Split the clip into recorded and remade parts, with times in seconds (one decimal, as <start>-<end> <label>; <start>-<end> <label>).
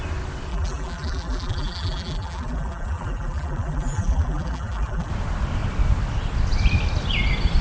0.0-0.5 recorded; 0.5-5.1 remade; 5.1-7.6 recorded